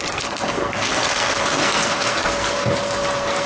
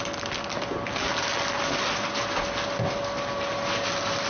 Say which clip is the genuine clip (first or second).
second